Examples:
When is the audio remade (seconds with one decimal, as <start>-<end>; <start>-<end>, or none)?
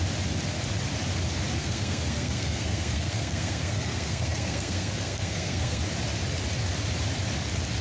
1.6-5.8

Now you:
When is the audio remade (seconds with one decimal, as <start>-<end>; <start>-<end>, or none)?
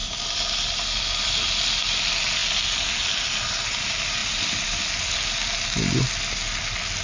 none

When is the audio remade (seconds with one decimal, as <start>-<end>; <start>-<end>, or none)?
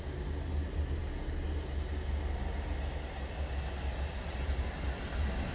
none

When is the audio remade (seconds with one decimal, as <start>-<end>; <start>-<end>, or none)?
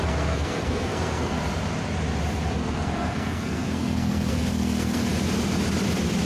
0.0-1.4; 2.6-5.1